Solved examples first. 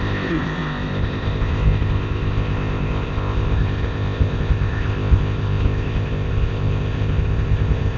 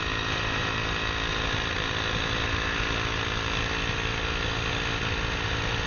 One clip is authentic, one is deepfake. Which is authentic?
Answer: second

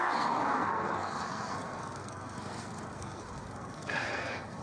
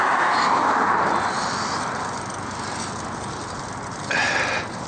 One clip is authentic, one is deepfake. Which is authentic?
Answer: second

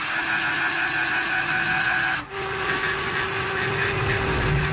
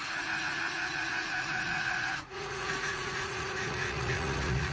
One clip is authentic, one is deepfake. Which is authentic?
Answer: first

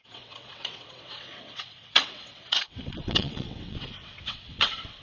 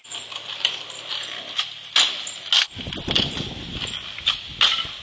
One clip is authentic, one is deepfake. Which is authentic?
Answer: second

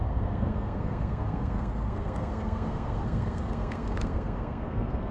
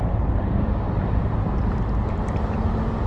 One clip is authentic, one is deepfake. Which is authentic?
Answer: second